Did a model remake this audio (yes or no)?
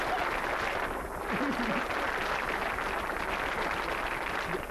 no